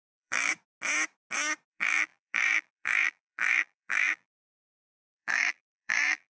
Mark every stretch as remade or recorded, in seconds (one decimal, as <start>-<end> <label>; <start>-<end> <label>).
0.0-0.5 remade; 0.5-1.7 recorded; 1.7-6.3 remade